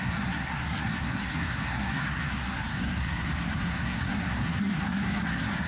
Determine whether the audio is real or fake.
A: fake